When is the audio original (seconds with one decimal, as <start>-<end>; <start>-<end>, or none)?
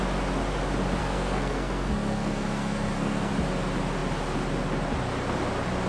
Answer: 0.0-1.0; 3.3-5.9